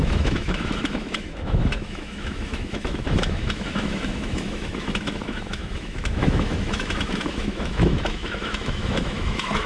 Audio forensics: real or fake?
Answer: fake